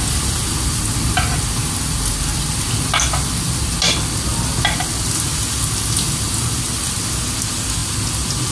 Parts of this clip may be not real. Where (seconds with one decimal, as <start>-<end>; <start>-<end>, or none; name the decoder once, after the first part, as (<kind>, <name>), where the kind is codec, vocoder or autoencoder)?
none